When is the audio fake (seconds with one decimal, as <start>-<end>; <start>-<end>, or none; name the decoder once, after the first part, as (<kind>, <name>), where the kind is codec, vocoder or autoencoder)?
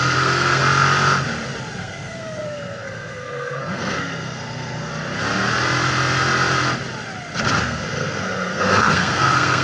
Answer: 0.0-0.6 (codec, SNAC); 1.8-4.9; 7.6-9.6